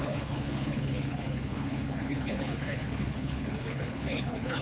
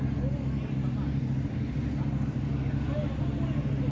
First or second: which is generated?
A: first